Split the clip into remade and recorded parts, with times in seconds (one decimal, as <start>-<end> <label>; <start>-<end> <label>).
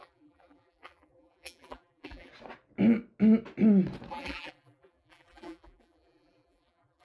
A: 0.0-2.3 remade; 2.3-4.1 recorded; 4.1-7.0 remade